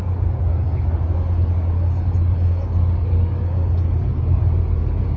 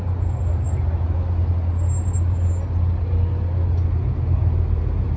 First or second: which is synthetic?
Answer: first